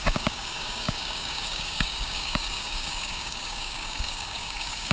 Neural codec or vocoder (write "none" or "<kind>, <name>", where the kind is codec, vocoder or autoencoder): codec, DAC